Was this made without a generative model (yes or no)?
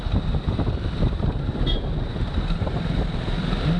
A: yes